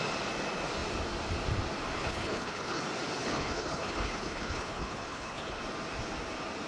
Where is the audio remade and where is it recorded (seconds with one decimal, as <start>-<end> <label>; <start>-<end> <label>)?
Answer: 0.0-2.0 recorded; 2.0-2.8 remade; 2.8-3.2 recorded; 3.2-5.6 remade; 5.6-6.7 recorded